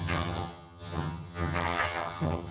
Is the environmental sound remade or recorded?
remade